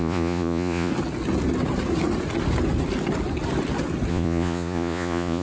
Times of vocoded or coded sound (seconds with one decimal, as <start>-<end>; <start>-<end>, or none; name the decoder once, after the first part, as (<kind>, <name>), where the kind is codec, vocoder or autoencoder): 0.0-0.9 (vocoder, Vocos); 4.1-5.4